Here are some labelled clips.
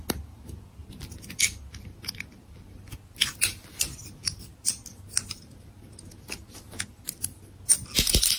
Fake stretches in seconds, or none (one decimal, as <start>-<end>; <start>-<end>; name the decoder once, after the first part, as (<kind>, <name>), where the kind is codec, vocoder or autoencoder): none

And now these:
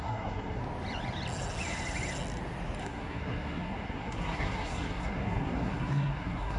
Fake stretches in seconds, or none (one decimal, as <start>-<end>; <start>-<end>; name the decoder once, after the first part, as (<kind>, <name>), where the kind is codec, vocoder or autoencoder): 0.0-0.6 (codec, SNAC); 2.8-6.6

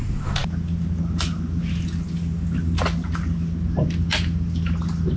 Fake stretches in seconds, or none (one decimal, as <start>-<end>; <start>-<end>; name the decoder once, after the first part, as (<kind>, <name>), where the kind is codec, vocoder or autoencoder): none